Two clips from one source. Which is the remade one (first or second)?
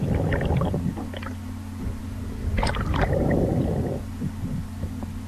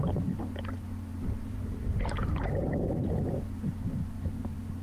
second